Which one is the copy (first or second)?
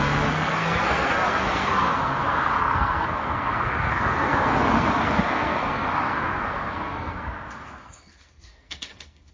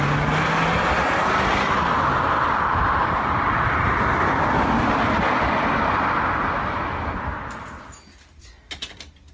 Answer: first